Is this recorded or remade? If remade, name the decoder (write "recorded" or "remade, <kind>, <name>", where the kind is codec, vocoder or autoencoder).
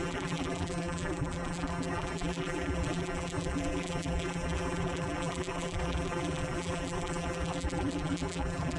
remade, vocoder, BigVGAN v2